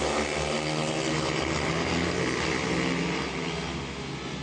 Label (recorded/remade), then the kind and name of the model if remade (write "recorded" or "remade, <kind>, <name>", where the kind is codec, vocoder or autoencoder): recorded